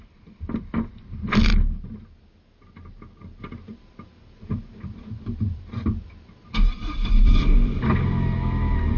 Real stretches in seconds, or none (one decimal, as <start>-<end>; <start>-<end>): 1.5-3.4